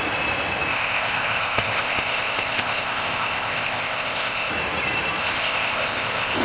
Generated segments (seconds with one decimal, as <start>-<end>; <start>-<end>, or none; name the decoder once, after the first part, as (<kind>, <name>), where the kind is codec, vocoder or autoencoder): 0.7-4.5 (codec, ZipCodec); 5.2-6.4